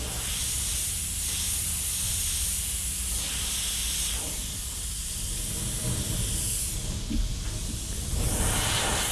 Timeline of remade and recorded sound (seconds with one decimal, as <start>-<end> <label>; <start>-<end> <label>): 0.0-9.1 recorded